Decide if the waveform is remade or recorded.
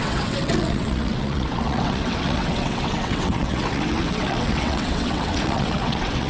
remade